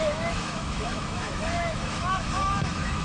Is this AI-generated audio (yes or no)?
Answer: yes